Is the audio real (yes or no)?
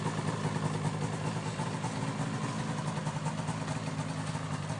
yes